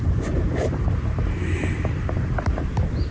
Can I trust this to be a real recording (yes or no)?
no